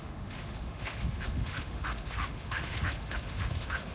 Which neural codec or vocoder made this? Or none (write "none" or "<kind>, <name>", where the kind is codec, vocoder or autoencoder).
autoencoder, DAC-VAE